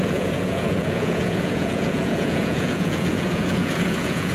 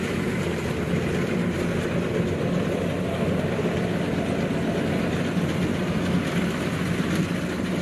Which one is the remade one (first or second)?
first